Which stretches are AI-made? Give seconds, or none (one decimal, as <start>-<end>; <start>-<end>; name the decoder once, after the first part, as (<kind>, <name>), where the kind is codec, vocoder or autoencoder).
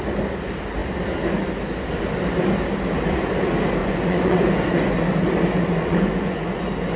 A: 3.8-6.6 (vocoder, Vocos)